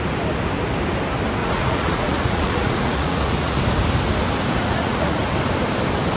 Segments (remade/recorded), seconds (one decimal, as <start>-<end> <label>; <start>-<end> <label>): 0.0-1.4 recorded; 1.4-3.6 remade; 3.6-4.6 recorded; 4.6-5.2 remade; 5.2-6.2 recorded